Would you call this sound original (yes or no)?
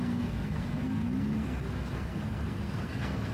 no